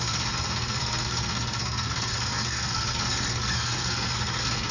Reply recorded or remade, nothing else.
remade